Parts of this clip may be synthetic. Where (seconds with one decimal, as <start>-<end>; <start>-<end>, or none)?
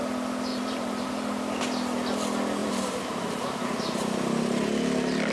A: 0.5-1.1; 2.6-3.4